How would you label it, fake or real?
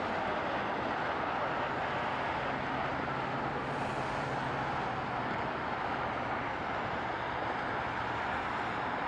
real